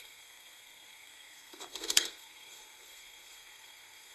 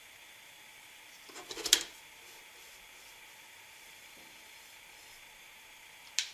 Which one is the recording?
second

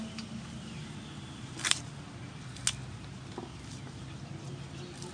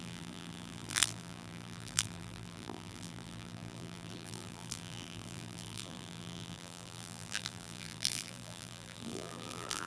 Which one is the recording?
first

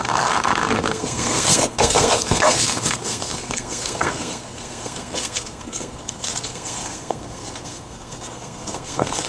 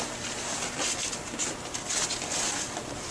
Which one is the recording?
second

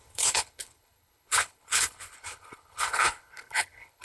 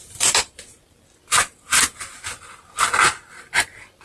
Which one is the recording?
second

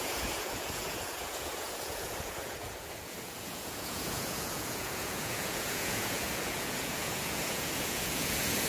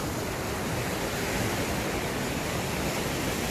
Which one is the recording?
second